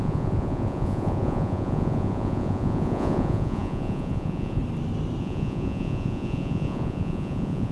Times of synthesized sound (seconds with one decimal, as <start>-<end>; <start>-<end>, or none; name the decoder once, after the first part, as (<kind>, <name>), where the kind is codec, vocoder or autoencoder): 0.0-4.6 (vocoder, Vocos); 5.2-7.7